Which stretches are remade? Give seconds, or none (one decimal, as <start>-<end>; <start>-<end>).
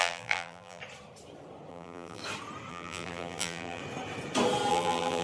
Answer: 0.0-0.8; 1.7-2.2; 2.7-3.8; 4.7-5.2